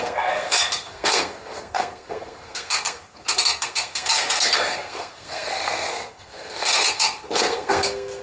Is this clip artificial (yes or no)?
yes